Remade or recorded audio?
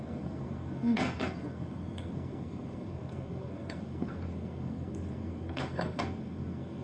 remade